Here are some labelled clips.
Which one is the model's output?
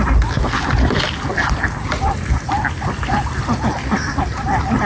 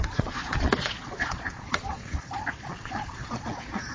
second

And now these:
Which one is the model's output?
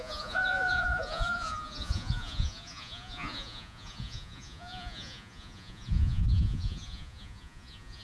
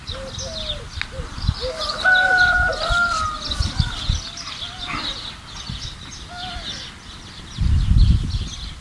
first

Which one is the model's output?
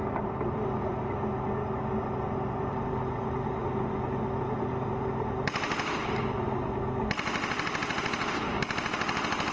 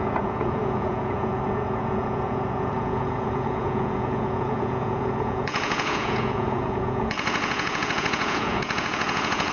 second